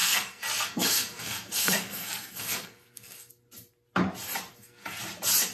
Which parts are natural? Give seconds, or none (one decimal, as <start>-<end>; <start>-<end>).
3.3-4.5; 5.0-5.5